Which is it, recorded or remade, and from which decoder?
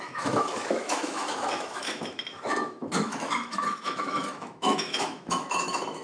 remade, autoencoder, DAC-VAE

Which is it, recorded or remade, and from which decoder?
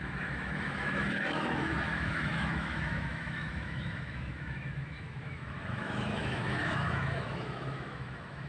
remade, autoencoder, DAC-VAE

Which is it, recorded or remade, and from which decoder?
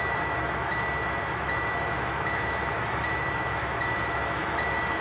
remade, autoencoder, DAC-VAE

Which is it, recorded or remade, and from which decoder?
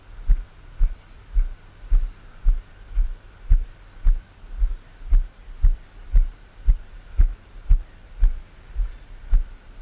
recorded